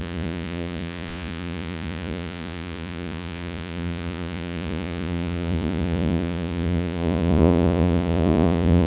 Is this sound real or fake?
fake